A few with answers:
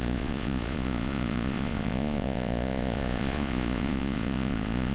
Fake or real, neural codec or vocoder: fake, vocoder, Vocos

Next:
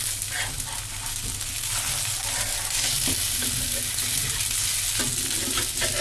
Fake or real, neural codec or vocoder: real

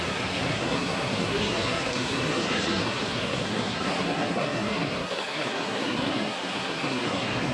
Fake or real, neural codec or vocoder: fake, codec, SNAC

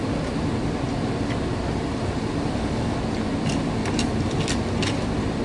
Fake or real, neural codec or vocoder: real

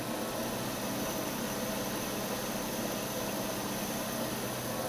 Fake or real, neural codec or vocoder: real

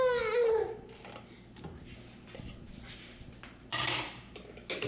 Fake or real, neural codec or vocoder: real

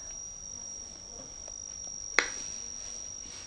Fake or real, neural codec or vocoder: real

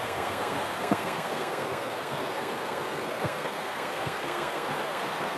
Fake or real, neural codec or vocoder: fake, codec, SNAC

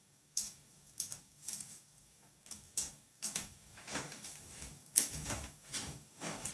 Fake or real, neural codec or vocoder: fake, codec, DAC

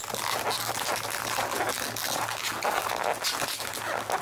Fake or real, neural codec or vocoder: real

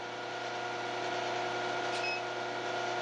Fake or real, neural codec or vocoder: real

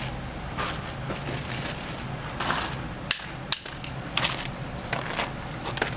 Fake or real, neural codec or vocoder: real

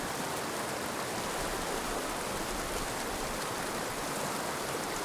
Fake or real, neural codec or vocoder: real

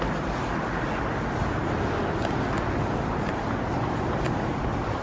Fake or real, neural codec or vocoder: real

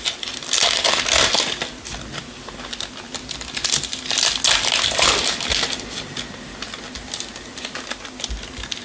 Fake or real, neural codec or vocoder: real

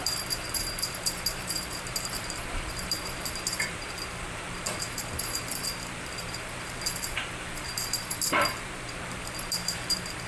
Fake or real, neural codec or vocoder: fake, vocoder, BigVGAN v2